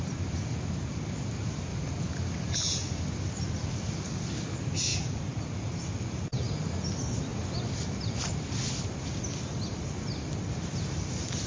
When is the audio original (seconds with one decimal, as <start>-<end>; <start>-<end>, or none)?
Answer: 0.0-1.7; 3.8-7.3; 9.9-11.5